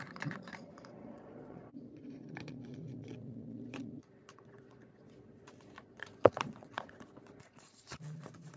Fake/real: fake